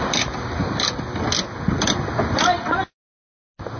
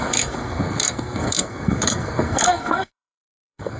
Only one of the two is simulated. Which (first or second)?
second